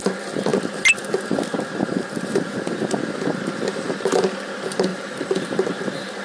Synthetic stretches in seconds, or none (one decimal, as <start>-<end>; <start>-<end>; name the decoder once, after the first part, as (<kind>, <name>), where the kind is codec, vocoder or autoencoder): 4.9-5.4 (vocoder, BigVGAN v2)